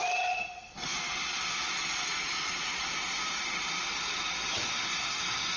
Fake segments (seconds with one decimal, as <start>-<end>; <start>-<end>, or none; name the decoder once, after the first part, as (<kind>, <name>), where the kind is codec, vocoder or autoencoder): 0.9-2.8 (vocoder, Vocos)